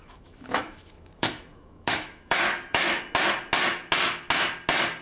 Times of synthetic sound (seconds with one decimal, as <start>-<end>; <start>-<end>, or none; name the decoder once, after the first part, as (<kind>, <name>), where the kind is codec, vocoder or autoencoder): 0.0-3.0 (autoencoder, DAC-VAE)